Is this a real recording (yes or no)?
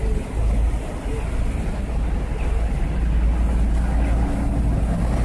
yes